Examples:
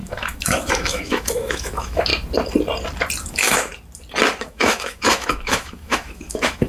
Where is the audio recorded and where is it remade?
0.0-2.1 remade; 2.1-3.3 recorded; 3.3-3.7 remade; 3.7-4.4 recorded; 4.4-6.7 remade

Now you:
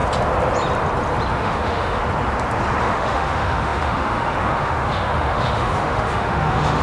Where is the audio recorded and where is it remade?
0.0-1.3 recorded; 1.3-2.0 remade; 2.0-2.8 recorded; 2.8-6.8 remade

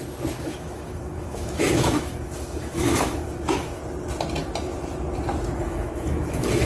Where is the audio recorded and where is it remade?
0.0-3.8 remade; 3.8-5.6 recorded; 5.6-6.7 remade